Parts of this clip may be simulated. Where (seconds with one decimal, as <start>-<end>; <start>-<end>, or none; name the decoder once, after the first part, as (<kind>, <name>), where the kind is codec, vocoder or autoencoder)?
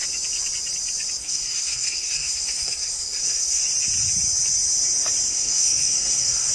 1.2-3.6 (codec, SNAC); 5.3-6.5